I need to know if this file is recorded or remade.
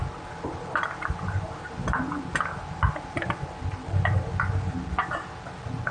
recorded